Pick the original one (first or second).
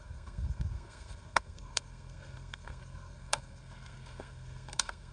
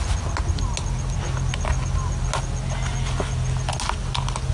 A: second